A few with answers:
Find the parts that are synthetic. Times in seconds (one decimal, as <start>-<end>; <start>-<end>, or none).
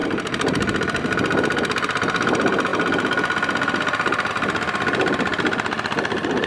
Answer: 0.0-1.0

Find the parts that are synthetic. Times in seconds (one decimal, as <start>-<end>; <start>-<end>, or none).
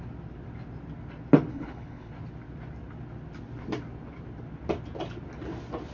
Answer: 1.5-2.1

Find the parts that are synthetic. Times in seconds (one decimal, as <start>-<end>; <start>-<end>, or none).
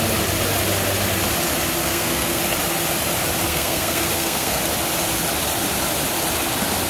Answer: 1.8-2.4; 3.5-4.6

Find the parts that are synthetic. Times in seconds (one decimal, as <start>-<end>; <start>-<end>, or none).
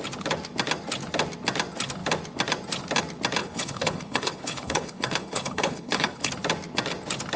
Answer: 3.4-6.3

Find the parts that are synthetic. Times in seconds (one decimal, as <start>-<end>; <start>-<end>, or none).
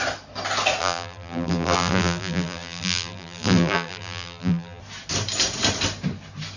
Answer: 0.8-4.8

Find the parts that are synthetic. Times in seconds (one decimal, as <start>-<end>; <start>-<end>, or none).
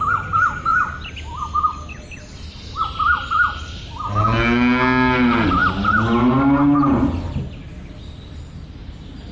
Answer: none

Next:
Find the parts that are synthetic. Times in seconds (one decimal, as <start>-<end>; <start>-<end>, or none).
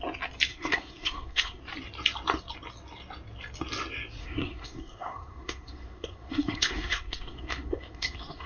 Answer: 0.5-1.6; 4.2-8.5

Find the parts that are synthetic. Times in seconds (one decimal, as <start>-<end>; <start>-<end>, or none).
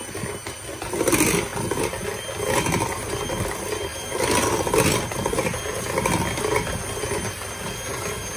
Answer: none